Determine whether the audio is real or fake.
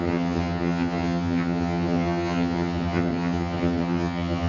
fake